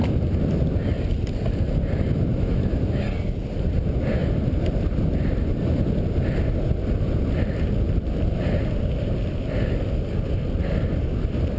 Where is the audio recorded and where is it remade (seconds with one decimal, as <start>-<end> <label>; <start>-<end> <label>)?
0.0-2.3 recorded; 2.3-3.0 remade; 3.0-11.6 recorded